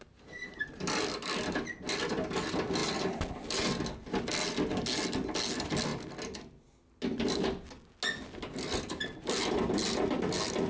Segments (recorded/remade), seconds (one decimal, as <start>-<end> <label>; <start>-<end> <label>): 0.0-10.7 recorded